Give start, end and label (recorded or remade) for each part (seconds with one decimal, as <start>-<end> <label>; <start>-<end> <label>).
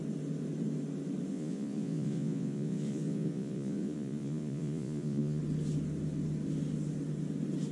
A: 0.0-1.3 recorded; 1.3-5.4 remade; 5.4-7.7 recorded